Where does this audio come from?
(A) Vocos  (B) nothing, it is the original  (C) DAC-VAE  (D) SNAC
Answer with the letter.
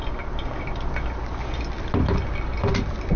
B